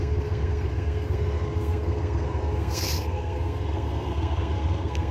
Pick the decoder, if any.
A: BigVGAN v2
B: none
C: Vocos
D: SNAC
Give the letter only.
D